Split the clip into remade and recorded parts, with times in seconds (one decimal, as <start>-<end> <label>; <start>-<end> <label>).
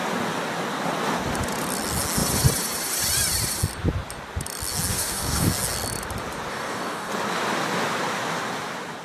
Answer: 0.0-4.9 recorded; 4.9-5.5 remade; 5.5-6.5 recorded; 6.5-7.1 remade; 7.1-9.0 recorded